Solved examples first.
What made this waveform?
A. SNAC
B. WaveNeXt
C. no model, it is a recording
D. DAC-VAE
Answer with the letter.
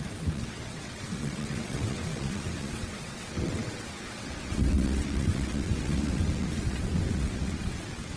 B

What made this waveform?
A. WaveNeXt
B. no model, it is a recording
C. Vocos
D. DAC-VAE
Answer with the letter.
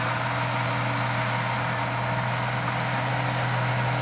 B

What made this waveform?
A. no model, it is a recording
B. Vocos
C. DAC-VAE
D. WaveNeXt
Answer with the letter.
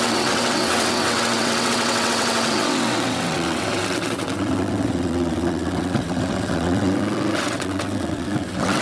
D